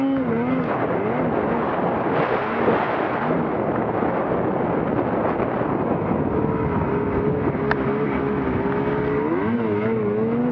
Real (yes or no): yes